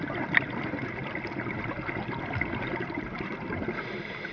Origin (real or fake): real